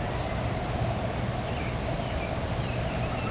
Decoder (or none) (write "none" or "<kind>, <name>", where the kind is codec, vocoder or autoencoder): none